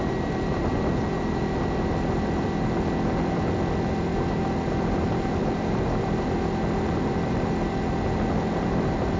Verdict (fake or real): real